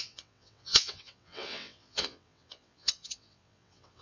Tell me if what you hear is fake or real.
fake